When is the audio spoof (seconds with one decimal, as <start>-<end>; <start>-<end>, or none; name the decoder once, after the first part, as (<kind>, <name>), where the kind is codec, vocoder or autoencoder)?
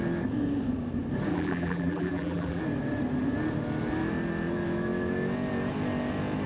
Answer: 1.3-2.6 (vocoder, BigVGAN v2)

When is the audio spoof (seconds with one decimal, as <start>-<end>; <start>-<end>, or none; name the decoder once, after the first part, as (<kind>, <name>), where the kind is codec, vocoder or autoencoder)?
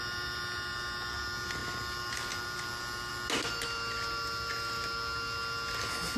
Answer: none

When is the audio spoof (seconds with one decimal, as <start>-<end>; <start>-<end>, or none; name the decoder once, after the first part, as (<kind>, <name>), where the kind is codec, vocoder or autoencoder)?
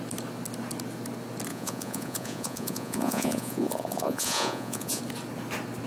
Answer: 1.5-5.0 (vocoder, Vocos)